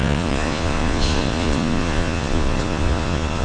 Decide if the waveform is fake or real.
fake